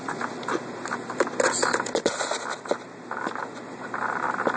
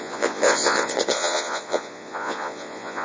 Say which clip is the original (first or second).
first